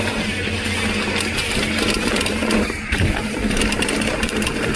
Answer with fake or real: real